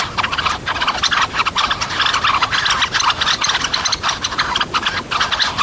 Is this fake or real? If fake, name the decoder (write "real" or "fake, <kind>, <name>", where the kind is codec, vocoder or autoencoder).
real